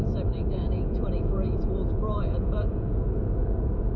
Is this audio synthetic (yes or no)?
yes